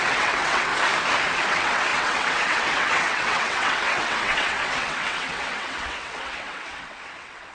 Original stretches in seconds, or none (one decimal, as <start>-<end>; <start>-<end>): 0.7-1.5